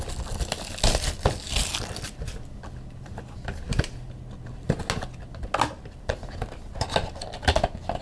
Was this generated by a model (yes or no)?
no